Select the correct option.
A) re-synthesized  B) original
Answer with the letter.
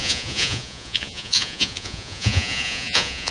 A